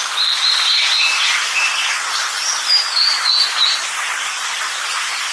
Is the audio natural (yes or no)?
yes